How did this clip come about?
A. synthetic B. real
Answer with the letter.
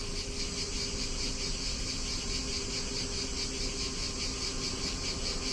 B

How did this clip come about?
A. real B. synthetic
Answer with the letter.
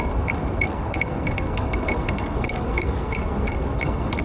B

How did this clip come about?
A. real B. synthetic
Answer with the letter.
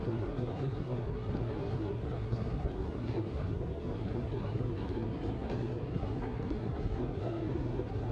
B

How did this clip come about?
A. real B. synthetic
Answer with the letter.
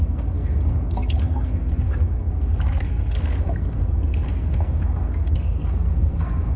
B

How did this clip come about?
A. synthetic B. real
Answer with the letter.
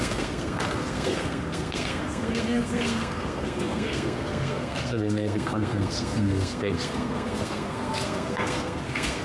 A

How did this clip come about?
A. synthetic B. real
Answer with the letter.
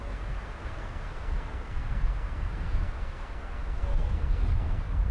A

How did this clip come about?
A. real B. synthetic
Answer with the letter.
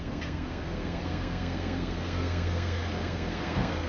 B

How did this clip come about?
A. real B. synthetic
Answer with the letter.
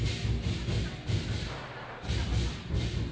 A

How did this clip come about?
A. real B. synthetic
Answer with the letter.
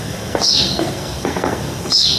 B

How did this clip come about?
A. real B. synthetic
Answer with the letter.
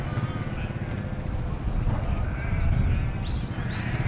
A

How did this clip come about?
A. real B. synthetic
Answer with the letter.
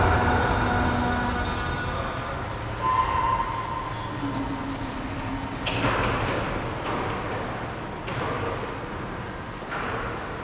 A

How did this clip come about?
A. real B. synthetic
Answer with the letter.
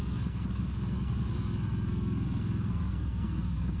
B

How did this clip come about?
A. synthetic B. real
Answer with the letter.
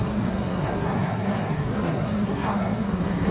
A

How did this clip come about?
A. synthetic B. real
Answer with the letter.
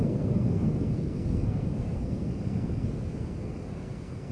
A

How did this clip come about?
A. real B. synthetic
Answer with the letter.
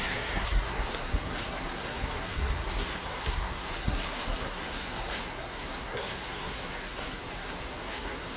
B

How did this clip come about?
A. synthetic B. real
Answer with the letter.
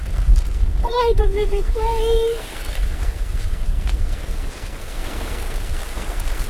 A